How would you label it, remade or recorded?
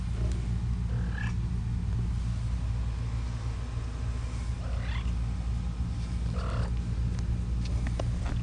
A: recorded